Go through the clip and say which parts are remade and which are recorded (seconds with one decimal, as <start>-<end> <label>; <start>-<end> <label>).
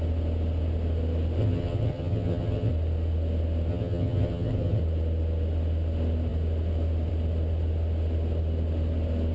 0.0-1.4 recorded; 1.4-2.7 remade; 2.7-3.7 recorded; 3.7-4.8 remade; 4.8-9.3 recorded